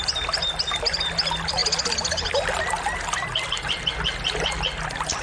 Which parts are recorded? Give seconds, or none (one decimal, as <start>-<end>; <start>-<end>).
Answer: 0.0-5.2